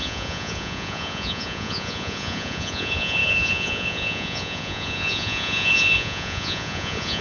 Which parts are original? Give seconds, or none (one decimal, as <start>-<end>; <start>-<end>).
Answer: none